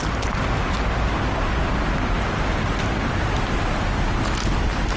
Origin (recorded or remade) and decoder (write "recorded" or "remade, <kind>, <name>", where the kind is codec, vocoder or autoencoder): recorded